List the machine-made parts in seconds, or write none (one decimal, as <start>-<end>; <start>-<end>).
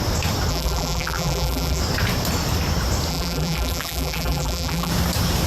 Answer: 0.5-1.8; 3.1-4.9